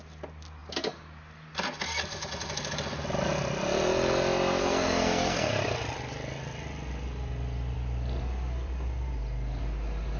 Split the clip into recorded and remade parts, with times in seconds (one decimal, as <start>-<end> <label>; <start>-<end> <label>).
0.0-4.6 recorded; 4.6-5.5 remade; 5.5-10.2 recorded